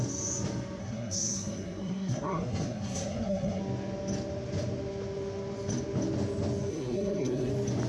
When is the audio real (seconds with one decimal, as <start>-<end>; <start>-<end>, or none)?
0.0-0.8; 3.6-6.7; 7.5-7.9